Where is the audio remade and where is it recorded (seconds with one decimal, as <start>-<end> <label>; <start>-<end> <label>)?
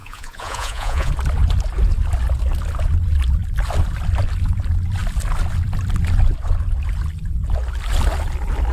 0.0-1.1 remade; 1.1-8.7 recorded